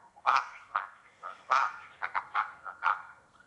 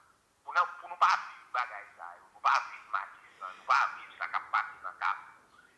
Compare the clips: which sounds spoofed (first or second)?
first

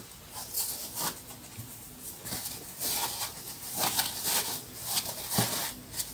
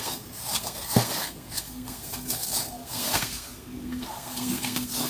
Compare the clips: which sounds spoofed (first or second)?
second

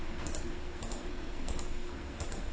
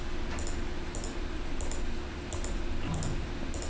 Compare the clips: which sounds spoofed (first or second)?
first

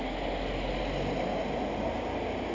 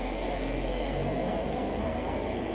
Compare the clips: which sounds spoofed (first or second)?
second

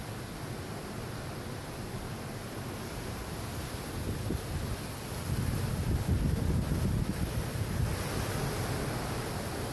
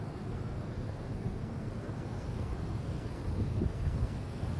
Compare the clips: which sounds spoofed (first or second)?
second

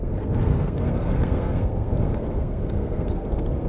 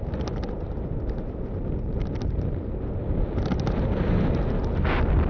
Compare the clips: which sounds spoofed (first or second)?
first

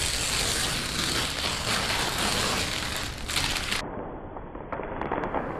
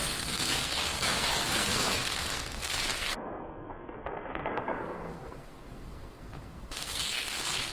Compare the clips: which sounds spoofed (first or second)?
second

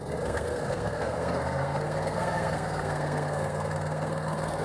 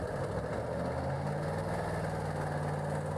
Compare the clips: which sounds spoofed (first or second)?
first